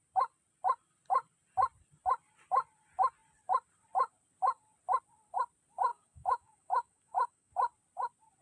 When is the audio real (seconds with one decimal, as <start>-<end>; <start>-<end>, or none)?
0.0-5.9; 7.5-8.4